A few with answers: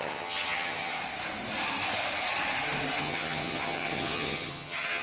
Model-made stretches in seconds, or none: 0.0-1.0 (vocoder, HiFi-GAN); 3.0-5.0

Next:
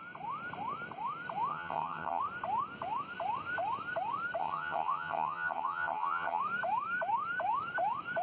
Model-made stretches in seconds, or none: 1.5-2.2 (vocoder, HiFi-GAN); 4.4-6.4

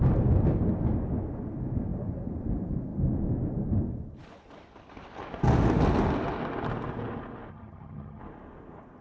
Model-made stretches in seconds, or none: 7.5-8.2 (vocoder, HiFi-GAN)

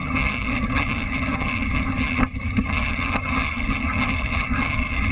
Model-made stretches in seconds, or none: 0.0-5.1 (vocoder, HiFi-GAN)

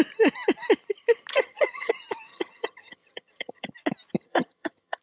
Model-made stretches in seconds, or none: 1.3-1.9 (vocoder, HiFi-GAN); 2.3-3.7; 4.2-5.0

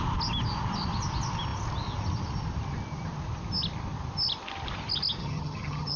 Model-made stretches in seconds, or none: 5.2-6.0 (vocoder, HiFi-GAN)

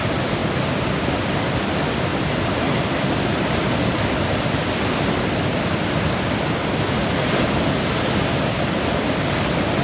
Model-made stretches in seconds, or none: none